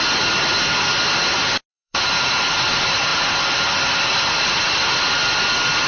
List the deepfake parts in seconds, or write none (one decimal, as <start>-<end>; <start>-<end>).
1.7-2.3; 3.1-5.3